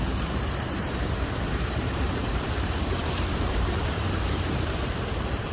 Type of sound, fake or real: fake